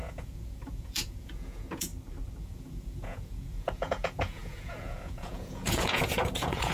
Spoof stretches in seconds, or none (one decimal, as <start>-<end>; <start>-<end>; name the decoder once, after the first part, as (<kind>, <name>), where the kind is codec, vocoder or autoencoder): 0.0-1.9 (vocoder, Vocos); 2.4-6.7